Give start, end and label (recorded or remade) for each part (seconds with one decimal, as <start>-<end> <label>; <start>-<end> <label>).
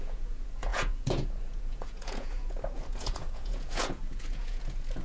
0.0-5.0 remade